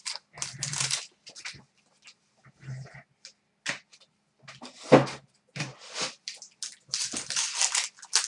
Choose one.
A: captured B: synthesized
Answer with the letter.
A